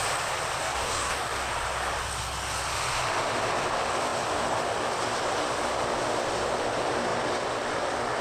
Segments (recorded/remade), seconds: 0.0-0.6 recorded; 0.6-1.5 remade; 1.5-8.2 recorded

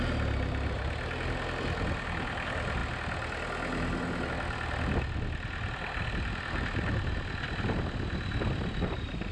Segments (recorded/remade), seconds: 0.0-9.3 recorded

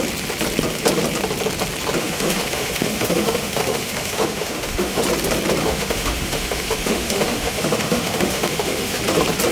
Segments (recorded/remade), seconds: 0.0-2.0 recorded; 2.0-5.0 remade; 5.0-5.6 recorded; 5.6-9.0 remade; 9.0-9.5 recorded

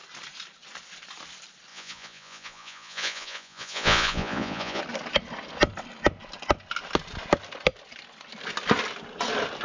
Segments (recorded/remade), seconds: 0.0-1.7 recorded; 1.7-4.8 remade; 4.8-9.6 recorded

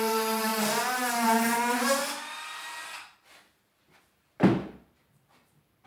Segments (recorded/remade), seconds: 0.0-0.5 remade; 0.5-4.0 recorded; 4.0-5.9 remade

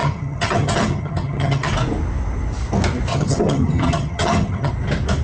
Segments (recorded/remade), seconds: 0.0-1.7 remade; 1.7-3.1 recorded; 3.1-4.7 remade; 4.7-5.2 recorded

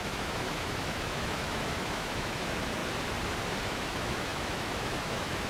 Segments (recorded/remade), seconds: 0.0-2.8 remade; 2.8-3.6 recorded; 3.6-5.5 remade

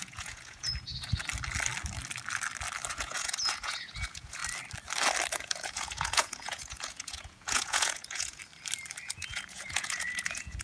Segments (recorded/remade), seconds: 0.0-0.9 remade; 0.9-2.9 recorded; 2.9-4.4 remade; 4.4-5.3 recorded; 5.3-8.4 remade; 8.4-9.1 recorded; 9.1-10.6 remade